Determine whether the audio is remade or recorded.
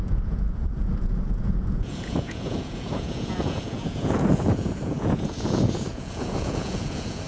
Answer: remade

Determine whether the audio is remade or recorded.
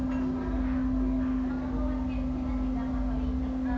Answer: recorded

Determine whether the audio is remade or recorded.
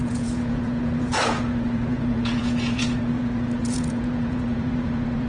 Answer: remade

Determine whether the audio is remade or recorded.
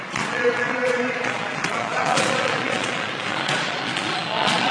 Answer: remade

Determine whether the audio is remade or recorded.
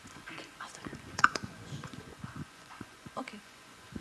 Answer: remade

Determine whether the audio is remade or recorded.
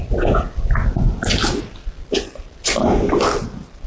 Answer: recorded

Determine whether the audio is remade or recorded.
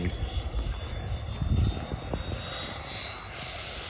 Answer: recorded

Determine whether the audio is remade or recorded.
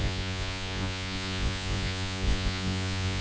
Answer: remade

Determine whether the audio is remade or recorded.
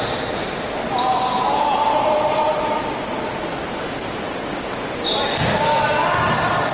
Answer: recorded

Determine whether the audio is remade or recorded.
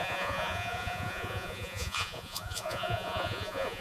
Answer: remade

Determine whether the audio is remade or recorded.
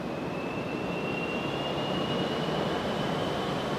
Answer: recorded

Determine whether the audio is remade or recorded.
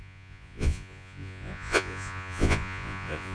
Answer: remade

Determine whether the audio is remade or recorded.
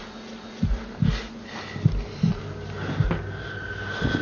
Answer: recorded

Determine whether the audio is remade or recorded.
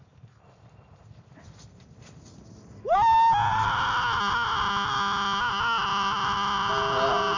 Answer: recorded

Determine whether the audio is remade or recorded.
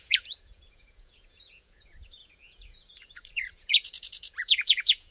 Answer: remade